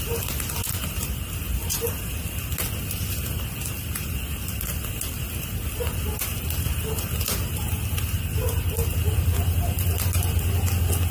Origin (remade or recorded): recorded